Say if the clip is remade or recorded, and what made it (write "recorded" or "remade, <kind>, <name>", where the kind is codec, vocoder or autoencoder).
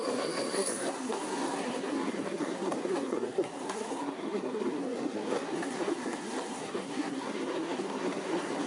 remade, codec, SNAC